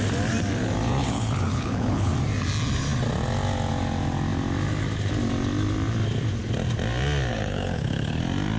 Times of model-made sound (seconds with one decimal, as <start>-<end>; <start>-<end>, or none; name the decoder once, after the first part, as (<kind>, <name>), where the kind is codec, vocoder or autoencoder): 0.9-2.1 (codec, HILCodec); 7.3-8.2